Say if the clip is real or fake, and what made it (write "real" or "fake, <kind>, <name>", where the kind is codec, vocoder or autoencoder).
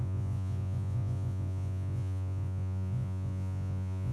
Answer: fake, vocoder, Vocos